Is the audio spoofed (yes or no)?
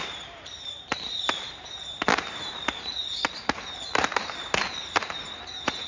yes